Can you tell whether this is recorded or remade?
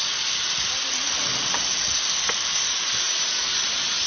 recorded